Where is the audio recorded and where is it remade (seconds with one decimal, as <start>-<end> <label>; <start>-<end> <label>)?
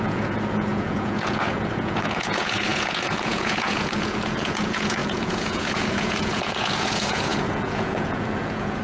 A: 0.0-8.8 remade